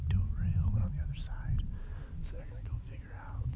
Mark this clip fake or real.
real